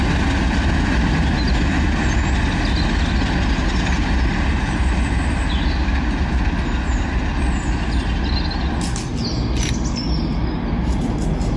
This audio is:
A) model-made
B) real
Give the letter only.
B